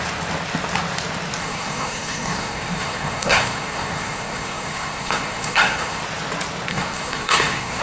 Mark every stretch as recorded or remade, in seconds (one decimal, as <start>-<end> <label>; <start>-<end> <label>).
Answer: 0.0-1.4 recorded; 1.4-6.0 remade; 6.0-6.7 recorded; 6.7-7.8 remade